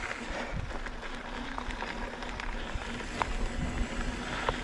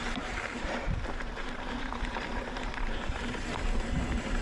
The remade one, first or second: second